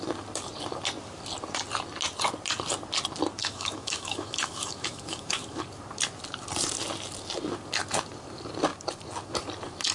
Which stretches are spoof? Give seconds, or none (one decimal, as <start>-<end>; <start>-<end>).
3.4-5.6